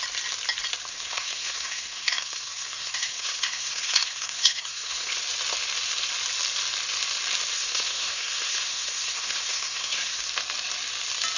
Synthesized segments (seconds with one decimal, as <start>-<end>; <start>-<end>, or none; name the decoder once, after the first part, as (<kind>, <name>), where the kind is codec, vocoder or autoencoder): 0.9-5.1 (codec, SNAC); 7.5-10.2